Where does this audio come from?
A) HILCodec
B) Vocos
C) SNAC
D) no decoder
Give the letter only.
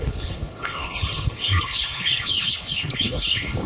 A